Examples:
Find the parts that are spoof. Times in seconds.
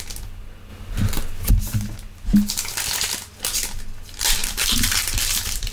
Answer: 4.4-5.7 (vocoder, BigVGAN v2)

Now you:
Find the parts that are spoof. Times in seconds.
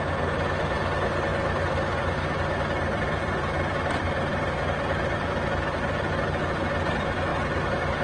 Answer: 1.3-6.1 (vocoder, BigVGAN v2); 7.3-8.0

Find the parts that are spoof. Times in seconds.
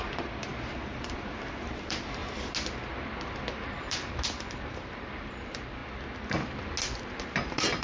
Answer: 0.0-2.2 (vocoder, BigVGAN v2); 3.5-5.8; 7.0-7.8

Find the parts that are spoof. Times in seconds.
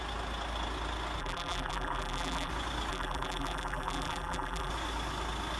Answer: 1.2-2.5 (vocoder, BigVGAN v2); 2.9-4.7